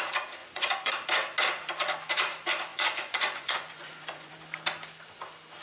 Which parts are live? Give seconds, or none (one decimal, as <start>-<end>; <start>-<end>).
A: 0.0-0.4; 0.9-2.7; 4.3-5.6

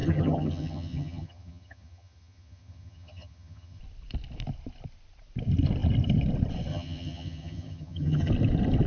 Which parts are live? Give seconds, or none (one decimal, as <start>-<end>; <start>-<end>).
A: 3.8-6.7; 8.3-8.9

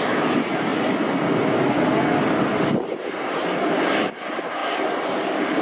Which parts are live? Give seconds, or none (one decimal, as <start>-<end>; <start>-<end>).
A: 0.0-5.6

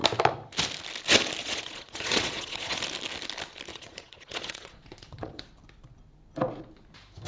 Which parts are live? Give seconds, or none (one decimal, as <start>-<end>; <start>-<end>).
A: 0.0-1.4; 2.8-3.7; 5.4-7.3

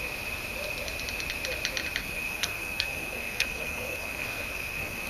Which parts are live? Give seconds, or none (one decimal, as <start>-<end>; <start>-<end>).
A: 0.0-2.0